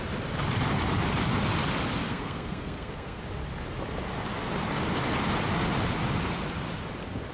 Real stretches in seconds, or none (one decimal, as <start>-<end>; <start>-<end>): 0.0-2.1; 3.2-7.3